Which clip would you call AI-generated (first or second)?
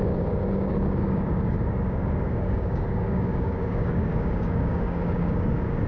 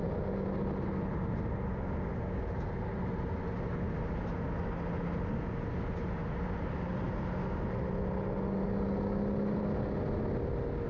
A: first